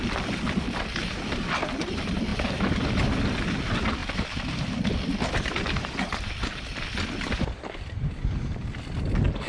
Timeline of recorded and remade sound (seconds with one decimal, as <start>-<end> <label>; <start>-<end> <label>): 0.0-9.5 remade